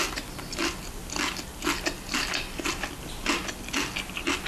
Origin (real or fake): real